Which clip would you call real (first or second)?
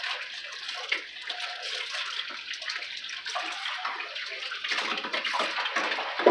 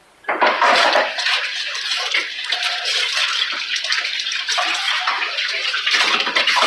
first